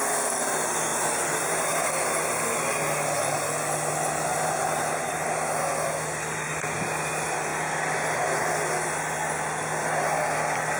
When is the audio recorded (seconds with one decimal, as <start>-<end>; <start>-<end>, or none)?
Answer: 0.0-10.8